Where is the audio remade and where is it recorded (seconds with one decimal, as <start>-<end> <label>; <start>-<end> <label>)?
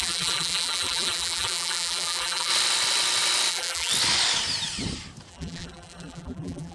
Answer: 0.0-2.5 remade; 2.5-3.5 recorded; 3.5-3.9 remade; 3.9-5.3 recorded; 5.3-6.7 remade